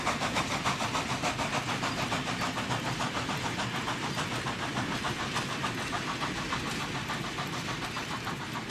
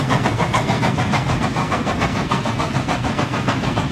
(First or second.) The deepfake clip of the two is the second